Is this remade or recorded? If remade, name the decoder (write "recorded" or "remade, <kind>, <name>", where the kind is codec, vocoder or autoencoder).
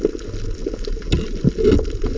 recorded